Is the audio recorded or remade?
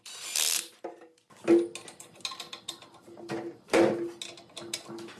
recorded